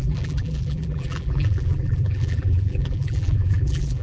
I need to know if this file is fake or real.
fake